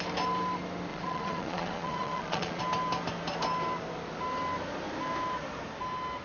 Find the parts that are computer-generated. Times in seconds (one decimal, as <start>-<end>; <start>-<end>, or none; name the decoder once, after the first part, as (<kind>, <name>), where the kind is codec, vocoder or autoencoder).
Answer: 0.9-2.6 (vocoder, Vocos)

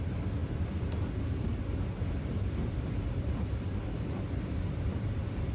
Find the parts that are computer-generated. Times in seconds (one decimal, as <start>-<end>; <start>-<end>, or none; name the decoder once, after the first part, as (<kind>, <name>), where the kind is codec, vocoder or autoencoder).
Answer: none

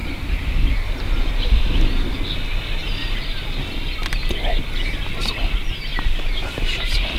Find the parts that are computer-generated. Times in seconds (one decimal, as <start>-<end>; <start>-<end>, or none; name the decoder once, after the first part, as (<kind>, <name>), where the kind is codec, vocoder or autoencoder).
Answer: 5.9-7.2 (vocoder, BigVGAN v2)

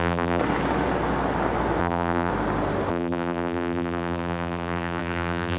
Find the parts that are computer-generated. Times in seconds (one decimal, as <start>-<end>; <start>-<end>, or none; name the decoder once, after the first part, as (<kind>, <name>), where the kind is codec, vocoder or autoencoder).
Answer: 0.0-0.4 (vocoder, BigVGAN v2); 1.8-2.3; 2.9-5.6

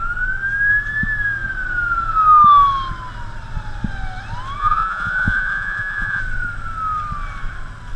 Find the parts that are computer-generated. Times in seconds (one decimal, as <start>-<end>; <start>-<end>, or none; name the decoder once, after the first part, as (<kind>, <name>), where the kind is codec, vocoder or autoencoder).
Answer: 4.6-6.2 (vocoder, Vocos)